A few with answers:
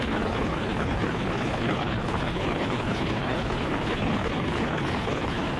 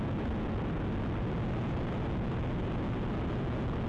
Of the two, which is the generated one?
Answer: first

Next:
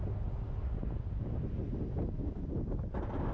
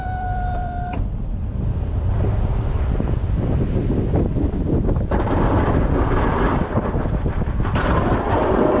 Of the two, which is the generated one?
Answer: second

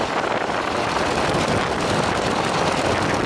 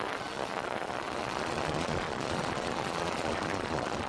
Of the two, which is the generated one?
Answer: second